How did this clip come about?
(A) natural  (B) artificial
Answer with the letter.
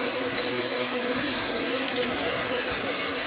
B